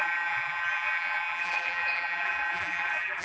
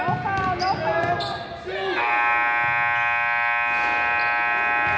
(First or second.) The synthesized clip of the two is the first